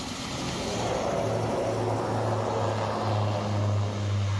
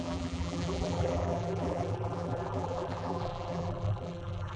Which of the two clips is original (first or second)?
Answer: first